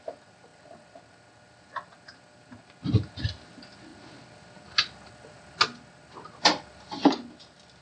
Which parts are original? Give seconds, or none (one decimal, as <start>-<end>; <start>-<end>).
0.0-7.8